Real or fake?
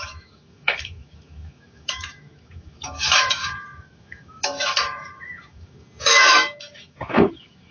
fake